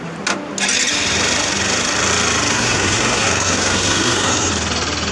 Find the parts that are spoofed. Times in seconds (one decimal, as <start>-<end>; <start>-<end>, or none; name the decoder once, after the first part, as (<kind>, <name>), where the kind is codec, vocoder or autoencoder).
2.5-4.5 (codec, SNAC)